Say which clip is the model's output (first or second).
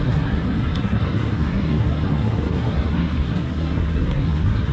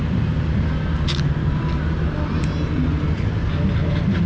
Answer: first